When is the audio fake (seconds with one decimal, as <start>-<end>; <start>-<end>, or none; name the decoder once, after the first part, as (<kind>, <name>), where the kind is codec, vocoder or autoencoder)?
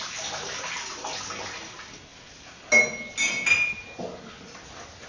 none